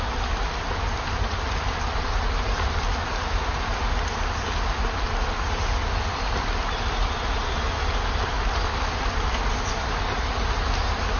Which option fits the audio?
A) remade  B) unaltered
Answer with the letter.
B